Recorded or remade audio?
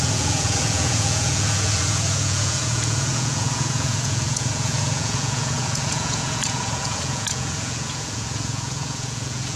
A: remade